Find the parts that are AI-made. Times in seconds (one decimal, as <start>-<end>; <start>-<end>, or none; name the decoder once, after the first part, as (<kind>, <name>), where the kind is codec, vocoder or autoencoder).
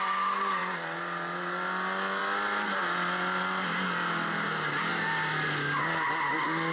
none